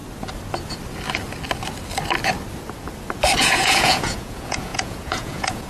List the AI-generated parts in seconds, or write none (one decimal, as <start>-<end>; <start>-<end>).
3.4-5.7